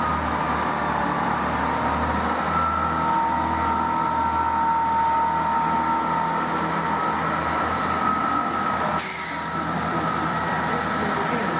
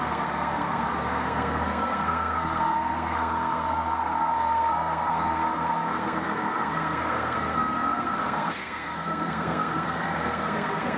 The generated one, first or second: second